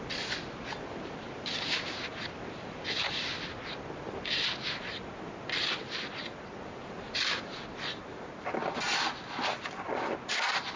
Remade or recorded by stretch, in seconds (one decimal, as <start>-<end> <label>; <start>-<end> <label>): 0.0-10.8 recorded